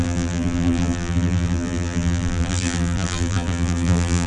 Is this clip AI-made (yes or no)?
yes